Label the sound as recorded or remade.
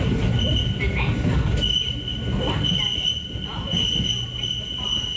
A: recorded